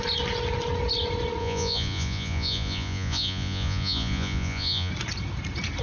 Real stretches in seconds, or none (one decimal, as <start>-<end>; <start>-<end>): 0.0-1.4; 4.9-5.8